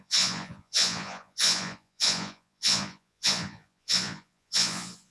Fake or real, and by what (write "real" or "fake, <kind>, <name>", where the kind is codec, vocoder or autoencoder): fake, vocoder, Vocos